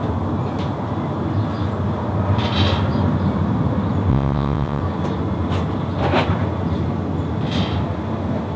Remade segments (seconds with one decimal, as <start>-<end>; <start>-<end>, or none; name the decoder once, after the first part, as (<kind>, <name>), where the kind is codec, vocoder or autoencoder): 4.1-4.8 (vocoder, WaveNeXt)